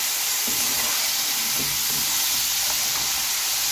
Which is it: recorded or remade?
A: recorded